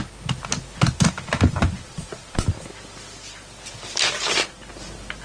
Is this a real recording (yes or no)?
yes